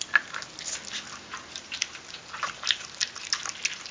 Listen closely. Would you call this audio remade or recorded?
recorded